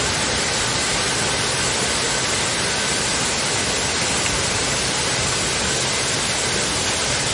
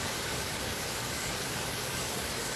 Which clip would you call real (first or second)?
first